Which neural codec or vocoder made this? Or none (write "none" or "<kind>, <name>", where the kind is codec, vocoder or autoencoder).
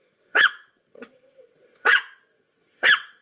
vocoder, WaveNeXt